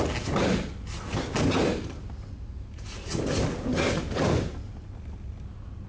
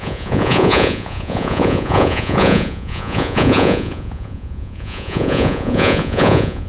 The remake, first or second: second